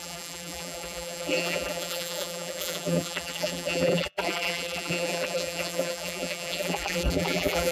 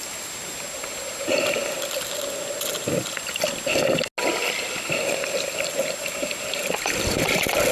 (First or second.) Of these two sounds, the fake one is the first